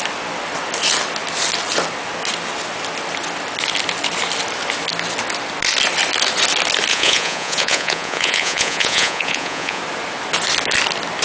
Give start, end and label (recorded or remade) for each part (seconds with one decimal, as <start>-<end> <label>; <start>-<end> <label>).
0.0-6.9 recorded; 6.9-9.8 remade; 9.8-11.2 recorded